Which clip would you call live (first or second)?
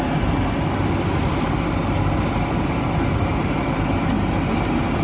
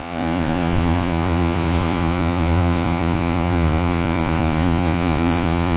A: first